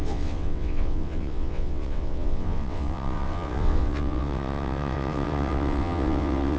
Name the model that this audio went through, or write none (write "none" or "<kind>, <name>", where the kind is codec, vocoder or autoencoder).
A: vocoder, WaveNeXt